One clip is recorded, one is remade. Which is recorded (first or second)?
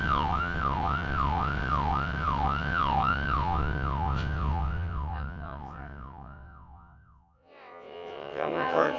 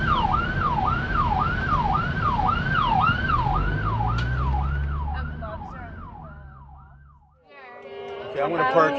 second